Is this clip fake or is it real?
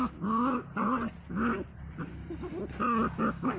real